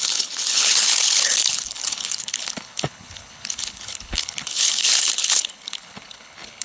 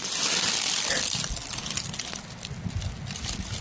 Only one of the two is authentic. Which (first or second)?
second